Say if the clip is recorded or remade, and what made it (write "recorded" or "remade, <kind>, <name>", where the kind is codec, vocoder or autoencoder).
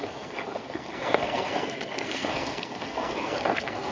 remade, codec, SNAC